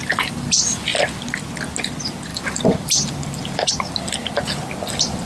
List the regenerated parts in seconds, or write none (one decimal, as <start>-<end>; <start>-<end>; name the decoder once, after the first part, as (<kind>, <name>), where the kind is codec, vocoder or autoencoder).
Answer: 2.3-3.7 (vocoder, BigVGAN v2)